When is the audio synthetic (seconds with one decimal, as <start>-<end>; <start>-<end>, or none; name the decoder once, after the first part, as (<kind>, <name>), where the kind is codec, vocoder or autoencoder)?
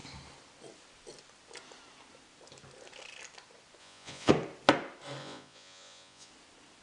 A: 3.8-4.3 (vocoder, Vocos); 5.2-6.3